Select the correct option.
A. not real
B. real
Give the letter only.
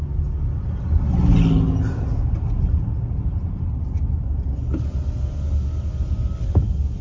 B